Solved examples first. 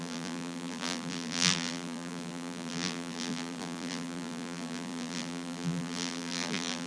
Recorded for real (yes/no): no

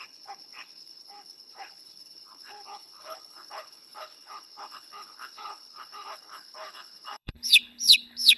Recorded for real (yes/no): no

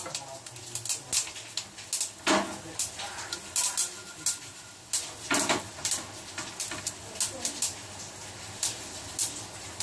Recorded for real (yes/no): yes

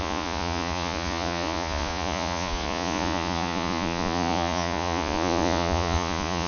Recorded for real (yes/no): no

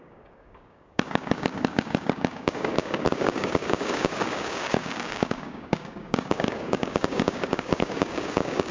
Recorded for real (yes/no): no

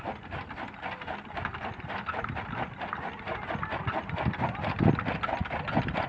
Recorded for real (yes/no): yes